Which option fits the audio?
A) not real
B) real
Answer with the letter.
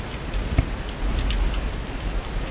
B